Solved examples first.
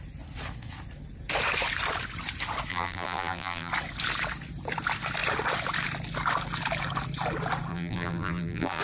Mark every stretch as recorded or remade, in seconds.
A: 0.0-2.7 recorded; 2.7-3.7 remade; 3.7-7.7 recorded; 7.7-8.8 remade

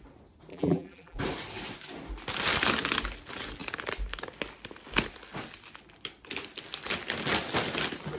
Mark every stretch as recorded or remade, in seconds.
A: 0.0-0.5 recorded; 0.5-1.2 remade; 1.2-8.2 recorded

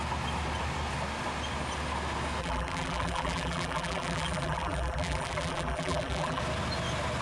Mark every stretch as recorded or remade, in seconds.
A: 0.0-2.4 recorded; 2.4-6.4 remade; 6.4-7.2 recorded

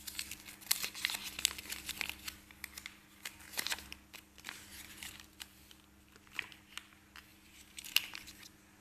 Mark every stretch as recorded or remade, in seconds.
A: 0.0-4.7 recorded; 4.7-5.7 remade; 5.7-7.3 recorded; 7.3-7.9 remade; 7.9-8.8 recorded

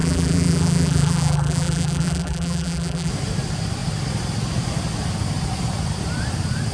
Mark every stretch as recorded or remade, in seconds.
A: 0.0-3.1 remade; 3.1-6.7 recorded

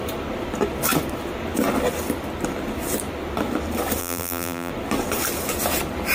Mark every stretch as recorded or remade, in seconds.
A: 0.0-4.0 recorded; 4.0-4.7 remade; 4.7-6.1 recorded